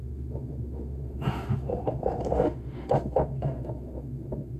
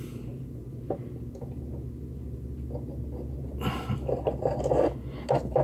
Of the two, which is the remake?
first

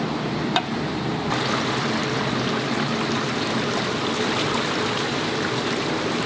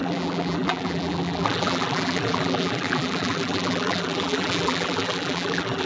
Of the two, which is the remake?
second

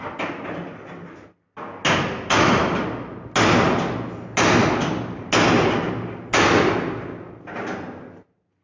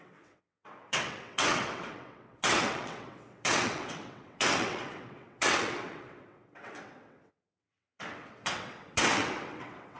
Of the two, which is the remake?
second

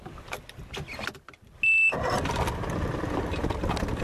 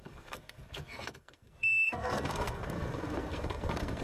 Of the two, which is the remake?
second